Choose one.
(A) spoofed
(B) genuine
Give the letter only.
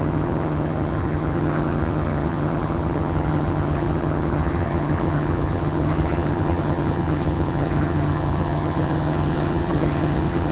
A